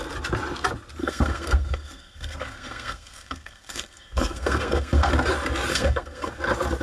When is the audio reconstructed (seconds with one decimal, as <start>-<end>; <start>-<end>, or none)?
1.0-5.1; 5.7-6.3